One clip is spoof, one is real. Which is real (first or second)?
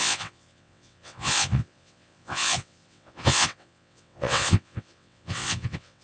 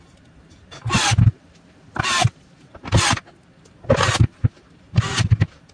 second